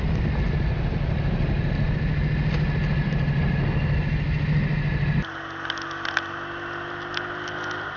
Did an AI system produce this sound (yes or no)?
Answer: no